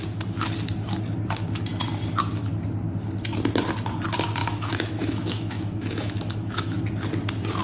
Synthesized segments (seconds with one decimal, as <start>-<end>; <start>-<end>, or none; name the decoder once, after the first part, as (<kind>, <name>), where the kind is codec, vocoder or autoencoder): 4.4-6.8 (autoencoder, DAC-VAE)